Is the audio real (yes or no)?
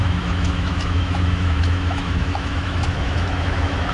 no